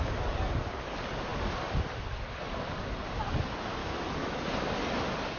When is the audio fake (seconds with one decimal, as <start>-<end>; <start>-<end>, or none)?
3.8-4.4